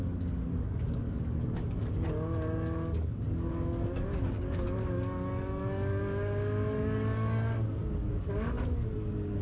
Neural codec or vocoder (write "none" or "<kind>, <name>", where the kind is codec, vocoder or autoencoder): codec, DAC